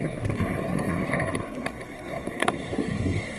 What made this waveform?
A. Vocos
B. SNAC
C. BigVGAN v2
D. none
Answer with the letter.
B